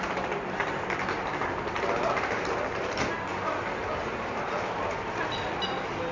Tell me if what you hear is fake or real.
real